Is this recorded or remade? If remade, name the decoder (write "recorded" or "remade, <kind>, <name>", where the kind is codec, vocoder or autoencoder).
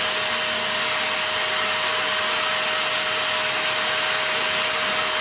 recorded